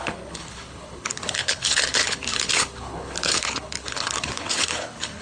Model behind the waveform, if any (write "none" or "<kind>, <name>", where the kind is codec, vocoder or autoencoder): codec, HILCodec